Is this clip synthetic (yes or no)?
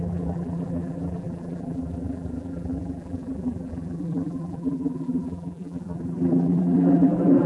yes